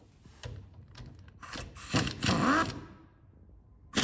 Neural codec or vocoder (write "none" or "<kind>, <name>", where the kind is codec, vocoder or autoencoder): none